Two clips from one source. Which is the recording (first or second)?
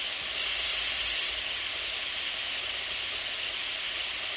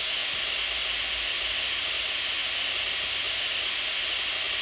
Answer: second